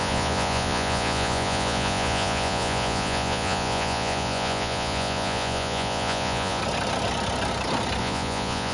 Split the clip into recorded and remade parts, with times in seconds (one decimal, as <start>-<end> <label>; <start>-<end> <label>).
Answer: 0.0-6.6 remade; 6.6-8.0 recorded; 8.0-8.7 remade